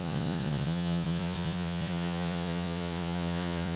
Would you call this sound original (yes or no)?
no